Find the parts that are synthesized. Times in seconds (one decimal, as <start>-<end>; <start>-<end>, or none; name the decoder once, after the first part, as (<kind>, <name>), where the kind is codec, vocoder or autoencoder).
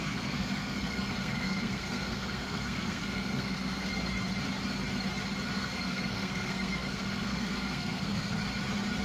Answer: 0.0-3.9 (codec, SNAC); 5.6-8.4